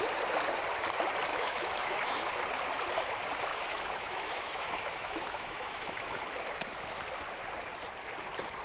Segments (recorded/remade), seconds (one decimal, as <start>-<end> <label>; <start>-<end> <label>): 0.0-1.3 recorded; 1.3-2.3 remade; 2.3-3.5 recorded; 3.5-6.2 remade; 6.2-8.6 recorded